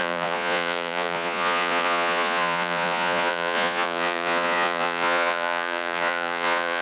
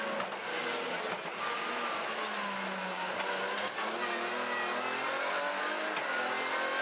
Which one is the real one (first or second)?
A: second